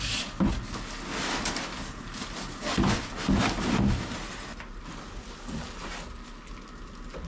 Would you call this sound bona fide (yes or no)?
yes